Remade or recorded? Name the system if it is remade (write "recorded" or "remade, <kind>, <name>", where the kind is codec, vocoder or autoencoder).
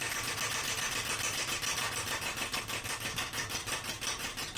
recorded